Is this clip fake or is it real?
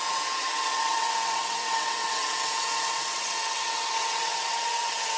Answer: fake